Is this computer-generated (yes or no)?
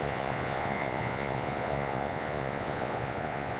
yes